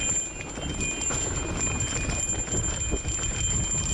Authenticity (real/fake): real